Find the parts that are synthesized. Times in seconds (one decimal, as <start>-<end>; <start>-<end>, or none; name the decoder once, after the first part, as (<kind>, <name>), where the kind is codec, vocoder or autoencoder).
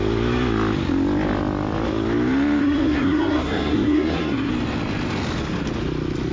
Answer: 2.6-4.5 (codec, SNAC)